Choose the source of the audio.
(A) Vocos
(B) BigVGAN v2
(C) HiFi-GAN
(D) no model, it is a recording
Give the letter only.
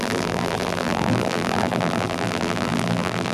B